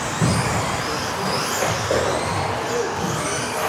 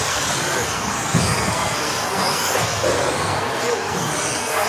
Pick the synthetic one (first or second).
second